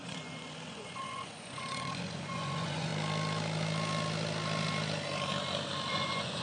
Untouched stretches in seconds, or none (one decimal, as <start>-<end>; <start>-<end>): 2.9-5.9